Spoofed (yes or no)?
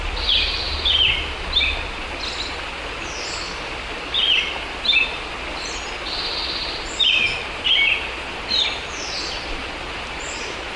no